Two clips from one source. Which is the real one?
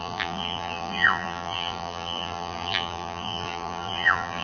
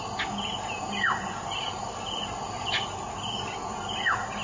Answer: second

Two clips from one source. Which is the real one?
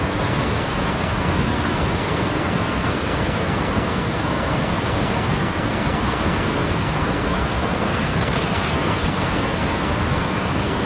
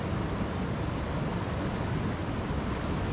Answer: second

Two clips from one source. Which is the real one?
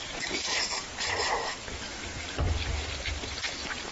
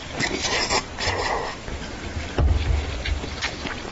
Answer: second